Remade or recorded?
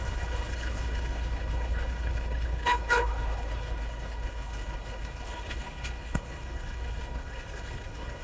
remade